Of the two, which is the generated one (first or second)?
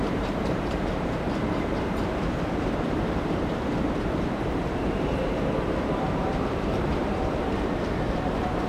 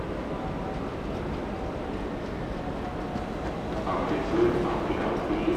first